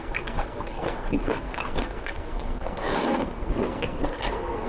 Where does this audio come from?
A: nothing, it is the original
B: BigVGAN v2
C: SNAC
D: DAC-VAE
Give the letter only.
C